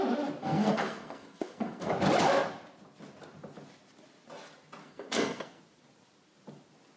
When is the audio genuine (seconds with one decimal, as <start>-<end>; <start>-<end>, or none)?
0.0-0.4; 1.9-4.8; 5.6-7.0